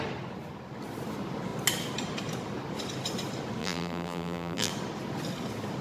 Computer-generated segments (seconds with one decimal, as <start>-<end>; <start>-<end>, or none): 3.6-4.7